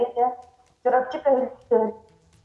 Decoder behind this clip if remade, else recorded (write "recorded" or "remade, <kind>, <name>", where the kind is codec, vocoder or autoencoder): recorded